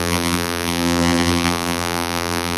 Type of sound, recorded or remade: remade